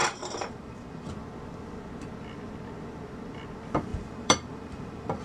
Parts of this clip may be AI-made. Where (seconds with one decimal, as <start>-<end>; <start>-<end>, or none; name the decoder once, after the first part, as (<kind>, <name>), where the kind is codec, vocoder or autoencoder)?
0.0-1.1 (vocoder, BigVGAN v2); 3.9-5.2